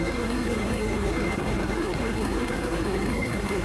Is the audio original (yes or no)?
no